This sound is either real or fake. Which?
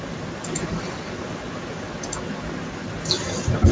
real